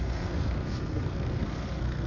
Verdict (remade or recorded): remade